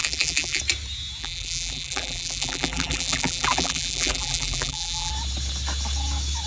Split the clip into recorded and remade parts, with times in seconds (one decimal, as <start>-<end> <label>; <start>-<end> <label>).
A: 0.0-0.6 remade; 0.6-1.2 recorded; 1.2-5.1 remade; 5.1-6.5 recorded